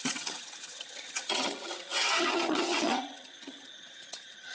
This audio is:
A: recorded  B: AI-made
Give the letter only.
B